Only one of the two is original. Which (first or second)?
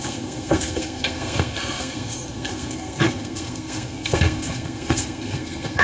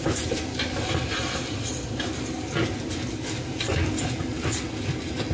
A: second